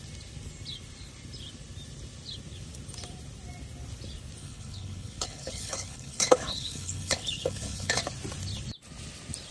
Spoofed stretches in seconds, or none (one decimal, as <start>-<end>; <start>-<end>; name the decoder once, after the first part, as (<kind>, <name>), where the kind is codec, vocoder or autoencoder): 4.4-8.0 (codec, HILCodec)